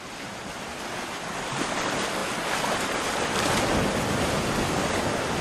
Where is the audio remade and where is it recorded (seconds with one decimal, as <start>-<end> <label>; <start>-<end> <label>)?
0.0-5.4 recorded